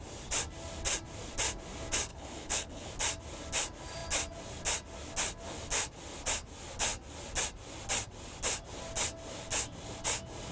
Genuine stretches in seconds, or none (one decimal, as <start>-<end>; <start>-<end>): 0.0-2.1; 2.9-10.5